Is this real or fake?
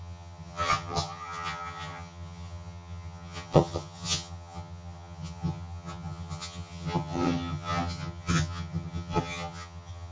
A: fake